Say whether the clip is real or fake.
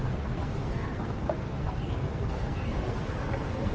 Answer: fake